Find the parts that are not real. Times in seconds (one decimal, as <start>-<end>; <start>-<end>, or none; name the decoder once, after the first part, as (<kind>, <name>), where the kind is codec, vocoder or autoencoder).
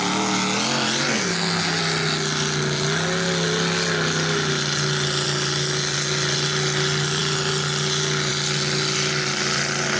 1.1-1.8 (codec, SNAC)